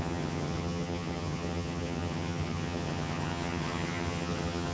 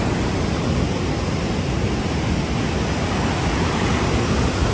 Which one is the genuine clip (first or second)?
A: second